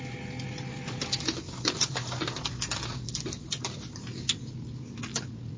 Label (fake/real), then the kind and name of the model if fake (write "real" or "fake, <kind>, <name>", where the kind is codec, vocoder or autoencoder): real